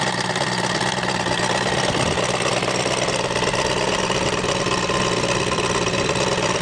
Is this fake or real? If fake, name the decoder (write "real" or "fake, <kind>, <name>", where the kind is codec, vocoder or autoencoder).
real